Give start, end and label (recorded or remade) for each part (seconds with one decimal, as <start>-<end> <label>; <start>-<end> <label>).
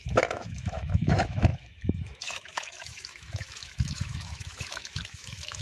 0.0-5.6 remade